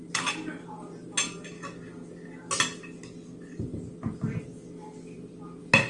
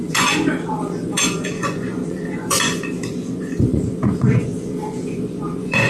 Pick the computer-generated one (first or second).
second